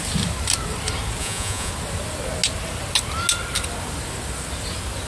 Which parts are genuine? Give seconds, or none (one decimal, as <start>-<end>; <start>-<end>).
0.0-1.2; 1.7-5.1